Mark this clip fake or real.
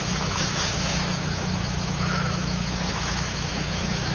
fake